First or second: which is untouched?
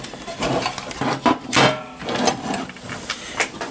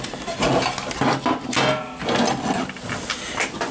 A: second